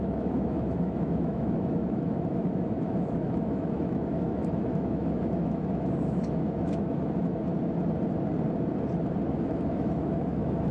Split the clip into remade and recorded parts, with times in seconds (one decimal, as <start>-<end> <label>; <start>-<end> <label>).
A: 0.0-7.5 remade; 7.5-9.3 recorded; 9.3-10.7 remade